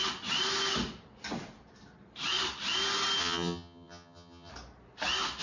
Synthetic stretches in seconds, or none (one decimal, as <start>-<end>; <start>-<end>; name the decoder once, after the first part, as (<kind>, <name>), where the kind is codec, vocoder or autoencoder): 3.2-4.5 (vocoder, HiFi-GAN)